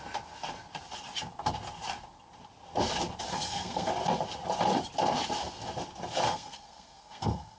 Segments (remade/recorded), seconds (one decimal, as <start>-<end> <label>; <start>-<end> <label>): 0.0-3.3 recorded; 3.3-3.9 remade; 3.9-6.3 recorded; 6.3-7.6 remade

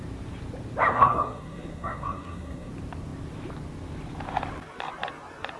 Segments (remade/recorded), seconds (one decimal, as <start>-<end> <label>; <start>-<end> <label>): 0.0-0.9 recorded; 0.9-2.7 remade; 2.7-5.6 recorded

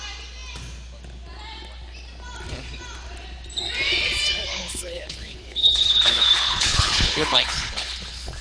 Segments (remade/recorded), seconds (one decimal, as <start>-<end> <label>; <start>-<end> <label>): 0.0-4.5 recorded; 4.5-8.4 remade